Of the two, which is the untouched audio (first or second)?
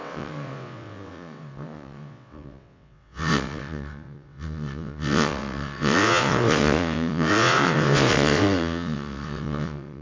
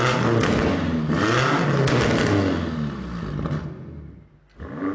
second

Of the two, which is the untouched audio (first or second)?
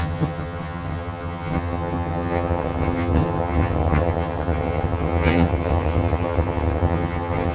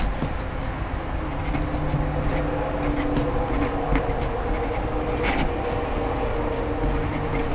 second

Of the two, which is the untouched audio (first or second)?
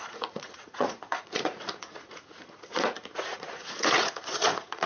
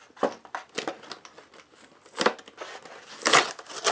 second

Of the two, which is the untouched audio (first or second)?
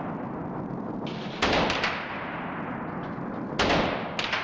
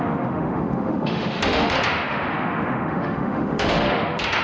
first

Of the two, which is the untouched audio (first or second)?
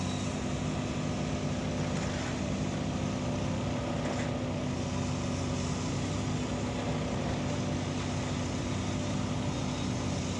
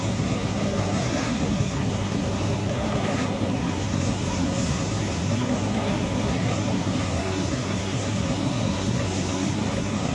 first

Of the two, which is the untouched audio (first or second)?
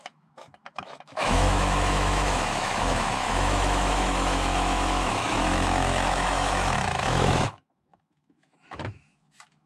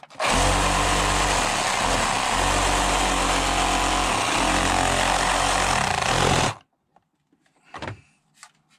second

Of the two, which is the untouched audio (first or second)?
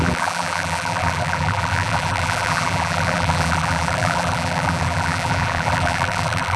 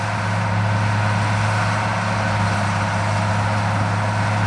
second